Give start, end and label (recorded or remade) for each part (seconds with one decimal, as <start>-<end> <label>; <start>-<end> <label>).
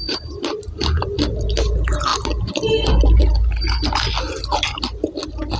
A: 0.0-5.6 recorded